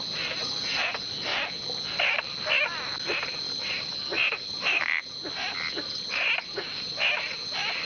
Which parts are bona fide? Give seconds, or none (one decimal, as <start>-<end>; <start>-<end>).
0.0-7.8